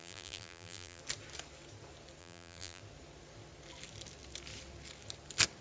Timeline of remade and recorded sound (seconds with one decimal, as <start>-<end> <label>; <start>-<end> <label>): 0.0-1.0 remade; 1.0-2.2 recorded; 2.2-2.8 remade; 2.8-5.6 recorded

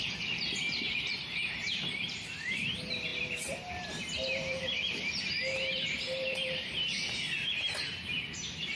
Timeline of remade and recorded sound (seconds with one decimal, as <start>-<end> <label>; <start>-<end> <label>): 0.0-8.7 remade

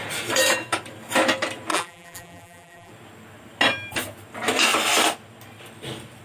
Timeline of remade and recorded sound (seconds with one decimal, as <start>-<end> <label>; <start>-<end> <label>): 0.0-1.7 recorded; 1.7-2.9 remade; 2.9-6.2 recorded

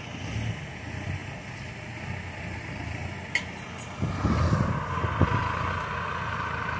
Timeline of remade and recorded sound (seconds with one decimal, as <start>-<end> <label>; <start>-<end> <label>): 0.0-6.8 recorded

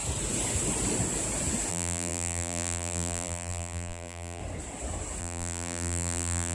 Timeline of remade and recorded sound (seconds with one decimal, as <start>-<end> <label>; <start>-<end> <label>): 0.0-1.7 recorded; 1.7-4.4 remade; 4.4-5.2 recorded; 5.2-6.5 remade